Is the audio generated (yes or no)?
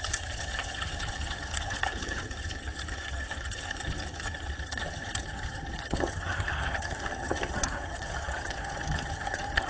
yes